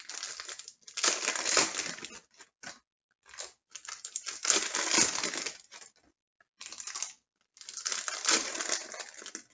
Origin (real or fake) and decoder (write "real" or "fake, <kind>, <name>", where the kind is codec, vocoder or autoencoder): real